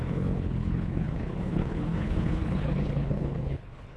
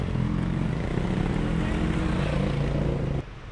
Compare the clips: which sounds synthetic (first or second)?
first